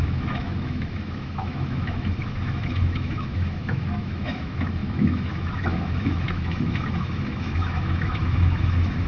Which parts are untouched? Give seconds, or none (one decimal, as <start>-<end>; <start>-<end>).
none